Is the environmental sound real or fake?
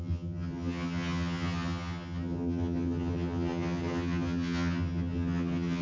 fake